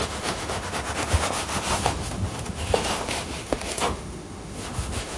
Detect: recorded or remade remade